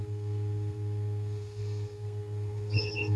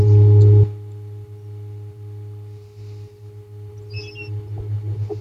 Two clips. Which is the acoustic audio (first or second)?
second